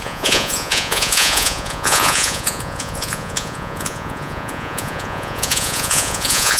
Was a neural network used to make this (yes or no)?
yes